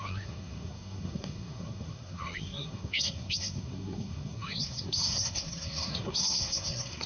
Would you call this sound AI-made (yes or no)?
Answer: yes